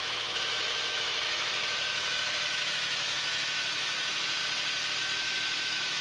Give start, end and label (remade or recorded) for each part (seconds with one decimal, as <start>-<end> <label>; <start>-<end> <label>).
0.0-4.4 remade; 4.4-5.0 recorded; 5.0-6.0 remade